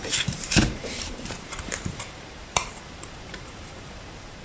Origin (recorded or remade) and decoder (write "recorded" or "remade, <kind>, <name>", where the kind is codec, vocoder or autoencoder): remade, vocoder, BigVGAN v2